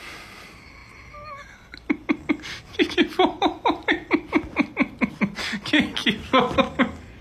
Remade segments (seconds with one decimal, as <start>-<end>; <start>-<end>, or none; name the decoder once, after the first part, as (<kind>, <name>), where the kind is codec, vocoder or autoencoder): none